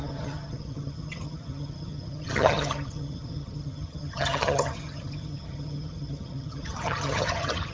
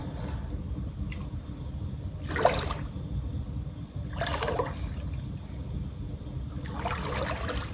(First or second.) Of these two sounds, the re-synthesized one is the first